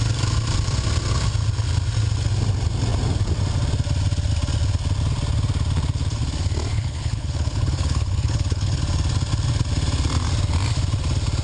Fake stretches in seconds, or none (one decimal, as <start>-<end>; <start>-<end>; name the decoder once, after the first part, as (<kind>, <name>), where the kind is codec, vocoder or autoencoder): 6.7-8.8 (codec, HILCodec)

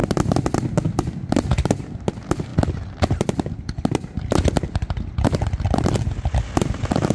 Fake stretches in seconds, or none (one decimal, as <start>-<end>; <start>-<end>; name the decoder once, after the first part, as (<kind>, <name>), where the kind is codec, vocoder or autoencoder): none

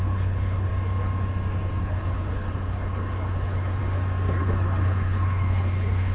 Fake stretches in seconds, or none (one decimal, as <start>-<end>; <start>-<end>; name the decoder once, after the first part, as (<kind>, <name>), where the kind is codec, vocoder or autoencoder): 0.0-0.7 (codec, HILCodec); 1.8-3.8; 4.4-6.1

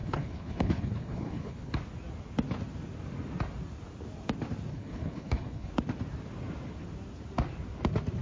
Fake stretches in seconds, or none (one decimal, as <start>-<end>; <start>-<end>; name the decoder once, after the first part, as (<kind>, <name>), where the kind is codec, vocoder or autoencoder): 0.0-1.7 (codec, HILCodec); 4.7-5.7

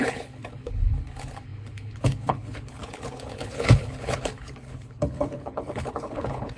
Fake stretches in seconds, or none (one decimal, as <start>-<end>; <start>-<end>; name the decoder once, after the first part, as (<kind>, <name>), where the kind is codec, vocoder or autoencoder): 0.0-6.6 (codec, HILCodec)

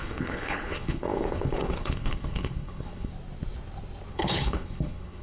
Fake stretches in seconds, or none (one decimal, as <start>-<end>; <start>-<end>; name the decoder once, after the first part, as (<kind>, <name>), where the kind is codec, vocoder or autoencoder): 0.0-3.1 (codec, HILCodec); 4.1-5.2

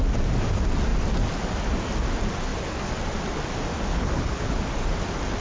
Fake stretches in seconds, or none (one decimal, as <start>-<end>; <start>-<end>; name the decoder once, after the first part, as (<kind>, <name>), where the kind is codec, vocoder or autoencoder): 3.9-4.6 (codec, HILCodec)